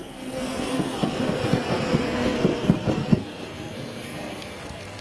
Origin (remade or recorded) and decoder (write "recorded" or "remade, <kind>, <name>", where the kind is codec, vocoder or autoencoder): remade, codec, SNAC